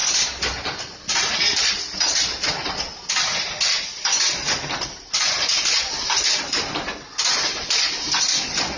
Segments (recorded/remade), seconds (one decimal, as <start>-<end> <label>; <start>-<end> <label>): 0.0-8.8 recorded